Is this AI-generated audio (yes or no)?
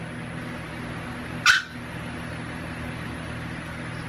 no